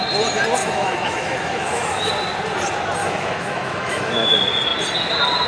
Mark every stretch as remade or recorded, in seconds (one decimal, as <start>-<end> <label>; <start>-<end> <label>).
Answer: 0.0-0.6 recorded; 0.6-2.1 remade; 2.1-3.0 recorded; 3.0-4.3 remade; 4.3-5.5 recorded